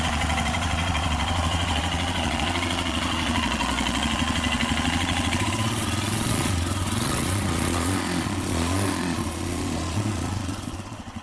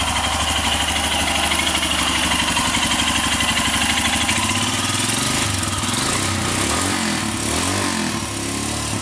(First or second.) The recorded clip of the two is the second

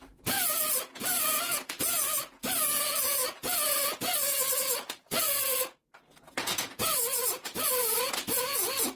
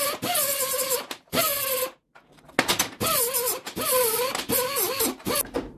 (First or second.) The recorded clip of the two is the second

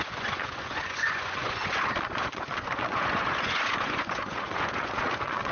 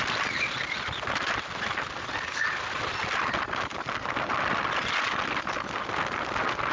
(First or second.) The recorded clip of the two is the second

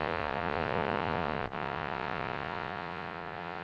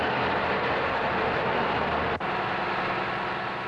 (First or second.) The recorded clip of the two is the second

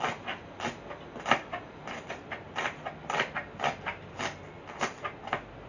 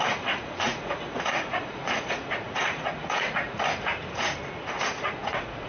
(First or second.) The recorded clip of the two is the first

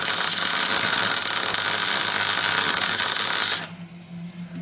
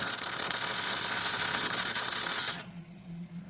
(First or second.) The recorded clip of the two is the first